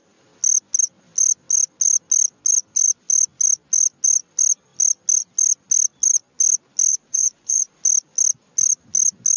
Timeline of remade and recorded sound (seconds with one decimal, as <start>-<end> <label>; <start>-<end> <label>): 0.0-6.9 recorded; 6.9-7.8 remade; 7.8-9.4 recorded